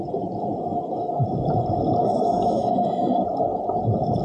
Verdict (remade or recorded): recorded